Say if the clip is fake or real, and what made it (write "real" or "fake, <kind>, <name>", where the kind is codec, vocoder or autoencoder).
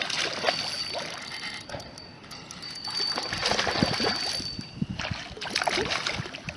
real